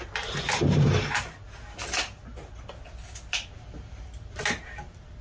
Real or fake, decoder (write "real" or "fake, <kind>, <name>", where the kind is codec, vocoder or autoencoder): real